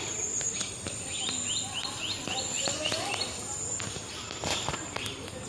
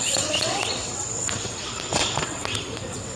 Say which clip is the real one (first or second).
first